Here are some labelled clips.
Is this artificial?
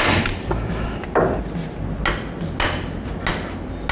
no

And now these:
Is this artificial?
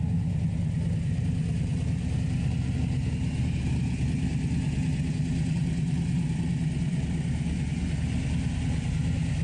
no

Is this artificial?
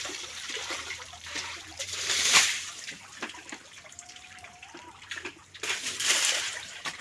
yes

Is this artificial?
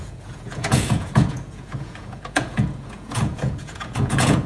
yes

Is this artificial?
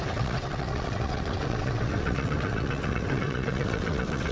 yes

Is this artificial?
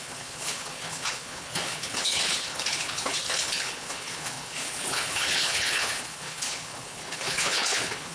yes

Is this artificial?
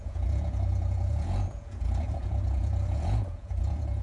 yes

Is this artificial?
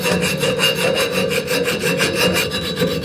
no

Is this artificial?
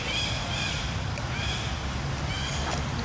no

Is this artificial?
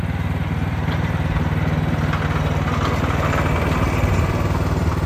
no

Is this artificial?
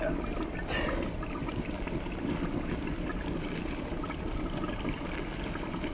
no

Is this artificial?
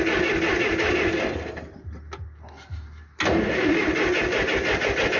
no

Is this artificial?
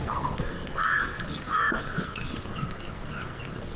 yes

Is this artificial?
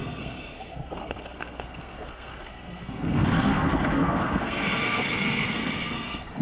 yes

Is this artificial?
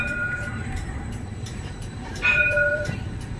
yes